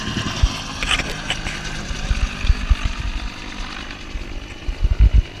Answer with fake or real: real